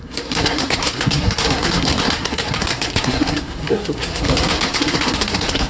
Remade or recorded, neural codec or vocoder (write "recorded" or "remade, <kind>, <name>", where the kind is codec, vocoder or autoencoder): remade, codec, SNAC